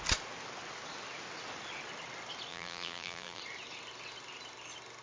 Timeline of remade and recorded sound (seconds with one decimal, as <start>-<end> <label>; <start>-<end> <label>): 0.0-2.5 recorded; 2.5-3.4 remade; 3.4-5.0 recorded